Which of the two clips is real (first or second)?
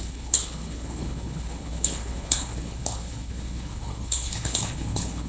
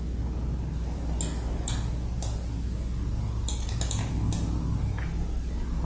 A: second